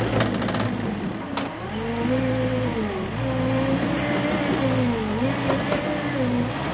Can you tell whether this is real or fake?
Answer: real